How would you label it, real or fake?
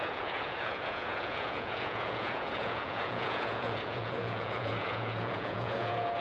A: fake